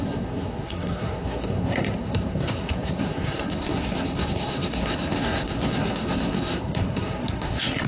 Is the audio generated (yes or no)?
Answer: yes